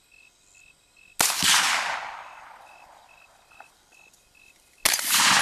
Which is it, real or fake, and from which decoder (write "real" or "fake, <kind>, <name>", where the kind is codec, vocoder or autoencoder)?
real